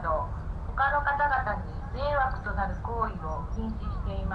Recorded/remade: recorded